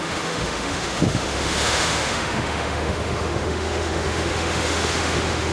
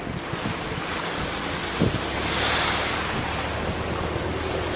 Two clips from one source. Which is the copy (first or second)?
first